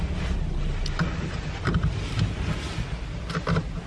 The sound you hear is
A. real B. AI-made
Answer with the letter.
A